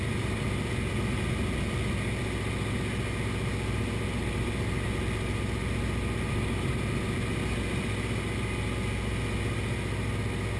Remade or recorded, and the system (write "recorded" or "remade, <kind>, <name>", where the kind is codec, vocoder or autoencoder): recorded